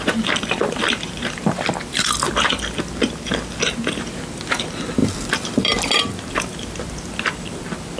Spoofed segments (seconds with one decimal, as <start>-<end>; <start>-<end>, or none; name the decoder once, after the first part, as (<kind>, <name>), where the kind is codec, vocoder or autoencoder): 0.6-2.5 (vocoder, BigVGAN v2); 5.0-7.6